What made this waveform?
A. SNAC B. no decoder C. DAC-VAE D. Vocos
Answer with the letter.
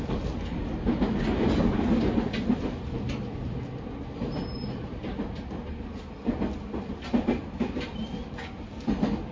B